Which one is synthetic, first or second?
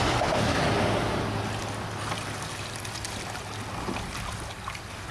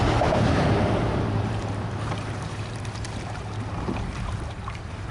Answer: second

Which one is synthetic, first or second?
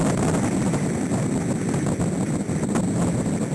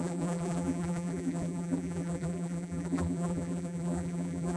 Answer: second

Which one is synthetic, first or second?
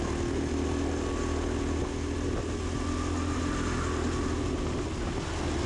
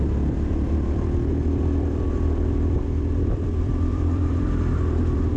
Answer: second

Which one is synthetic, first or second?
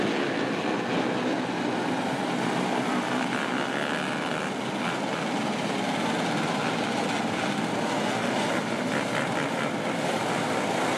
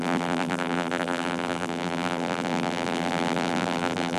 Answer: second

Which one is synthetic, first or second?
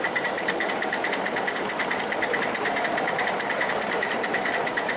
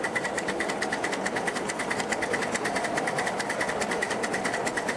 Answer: first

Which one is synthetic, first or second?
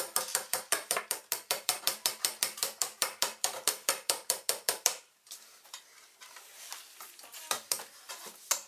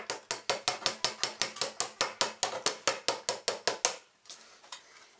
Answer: first